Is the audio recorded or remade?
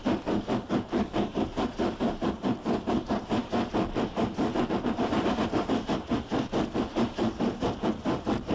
remade